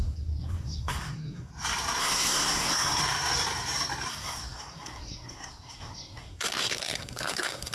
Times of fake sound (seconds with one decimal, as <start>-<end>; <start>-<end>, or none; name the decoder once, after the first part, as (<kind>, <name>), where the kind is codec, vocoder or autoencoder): 0.0-1.5 (codec, SNAC); 2.0-3.0; 4.1-7.7

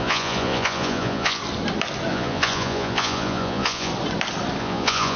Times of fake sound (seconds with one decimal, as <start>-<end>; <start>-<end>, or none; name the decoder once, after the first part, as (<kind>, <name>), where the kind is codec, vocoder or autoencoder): 0.0-1.4 (vocoder, Vocos); 2.1-3.9; 4.6-5.2

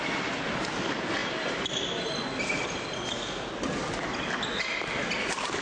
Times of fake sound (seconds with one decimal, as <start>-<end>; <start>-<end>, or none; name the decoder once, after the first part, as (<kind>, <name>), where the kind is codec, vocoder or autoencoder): none

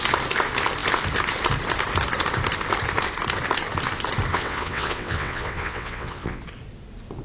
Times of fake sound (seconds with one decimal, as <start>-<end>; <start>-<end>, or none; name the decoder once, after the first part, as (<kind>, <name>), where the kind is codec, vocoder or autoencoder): 4.3-6.4 (vocoder, WaveNeXt)

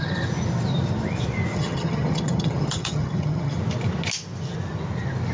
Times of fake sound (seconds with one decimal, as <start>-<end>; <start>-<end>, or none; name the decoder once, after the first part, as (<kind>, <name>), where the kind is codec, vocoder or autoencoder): 1.5-3.6 (vocoder, HiFi-GAN)

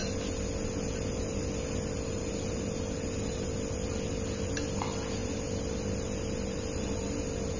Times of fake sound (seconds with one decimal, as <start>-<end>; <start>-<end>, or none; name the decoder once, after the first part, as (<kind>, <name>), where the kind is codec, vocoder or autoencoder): none